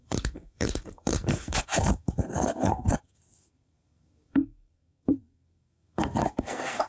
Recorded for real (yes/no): no